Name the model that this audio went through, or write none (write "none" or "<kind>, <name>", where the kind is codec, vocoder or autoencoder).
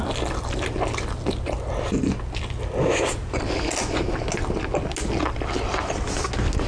none